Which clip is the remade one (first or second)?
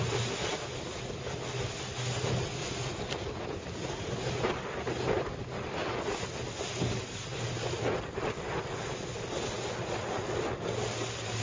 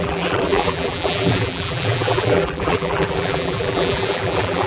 second